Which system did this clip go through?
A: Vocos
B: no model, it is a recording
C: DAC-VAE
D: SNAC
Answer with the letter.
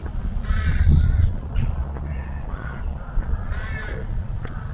A